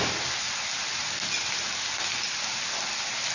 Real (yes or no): yes